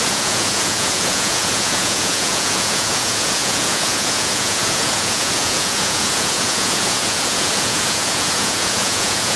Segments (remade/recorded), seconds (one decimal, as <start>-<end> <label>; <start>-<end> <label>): 0.0-9.4 remade